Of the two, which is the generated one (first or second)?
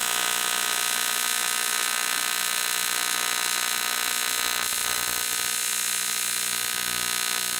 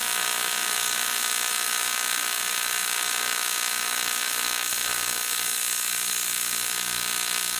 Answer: second